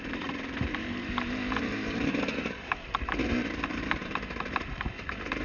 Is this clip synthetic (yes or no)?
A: yes